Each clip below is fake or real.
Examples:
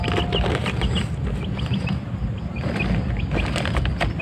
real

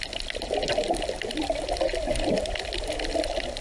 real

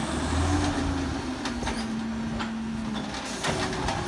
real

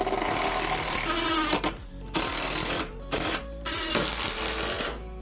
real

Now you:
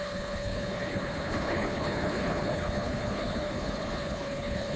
fake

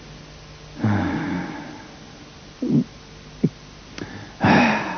real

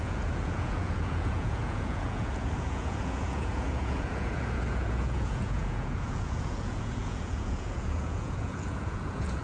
fake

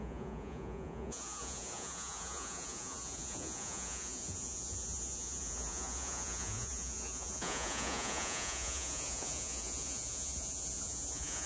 fake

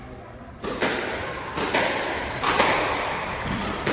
real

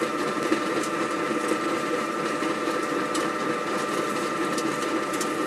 fake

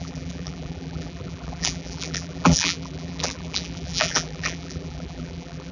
fake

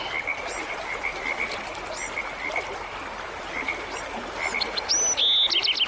real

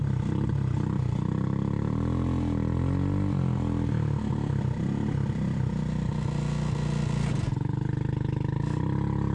real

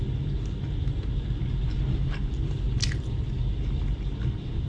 real